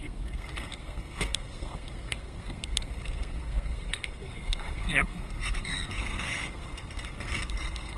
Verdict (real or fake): fake